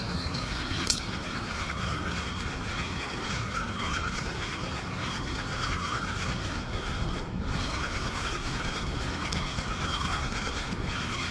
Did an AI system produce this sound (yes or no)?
yes